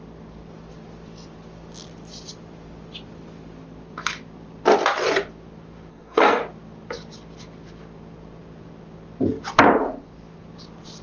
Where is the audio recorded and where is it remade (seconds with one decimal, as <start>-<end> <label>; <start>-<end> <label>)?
0.0-5.9 recorded; 5.9-6.4 remade; 6.4-11.0 recorded